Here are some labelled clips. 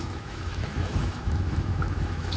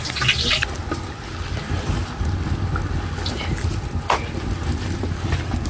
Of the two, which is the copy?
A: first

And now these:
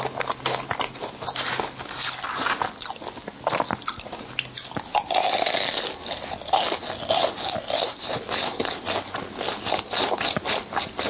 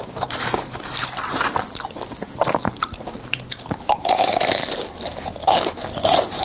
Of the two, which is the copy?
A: second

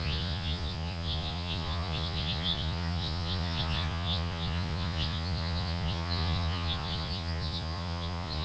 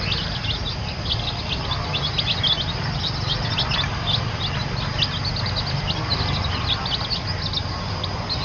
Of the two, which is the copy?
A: first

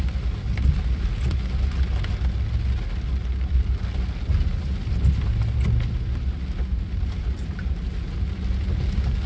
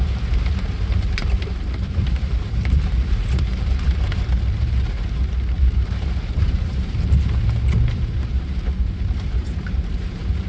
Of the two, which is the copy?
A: second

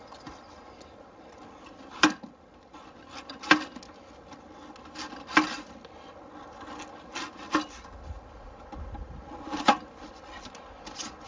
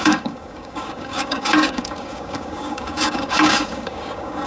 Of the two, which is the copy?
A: second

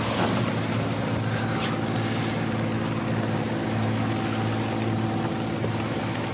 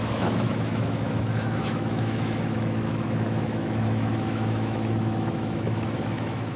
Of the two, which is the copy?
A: second